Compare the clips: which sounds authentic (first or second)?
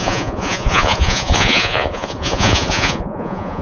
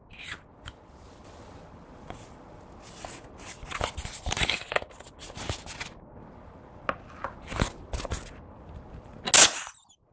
second